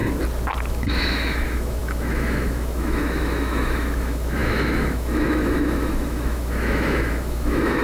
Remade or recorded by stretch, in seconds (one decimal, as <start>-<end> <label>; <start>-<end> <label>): 0.0-0.7 recorded; 0.7-7.8 remade